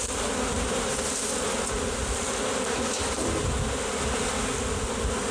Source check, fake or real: real